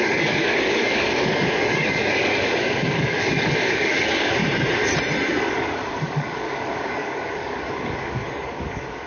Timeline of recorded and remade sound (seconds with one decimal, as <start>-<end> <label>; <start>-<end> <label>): 0.0-4.4 remade; 4.4-5.4 recorded; 5.4-9.1 remade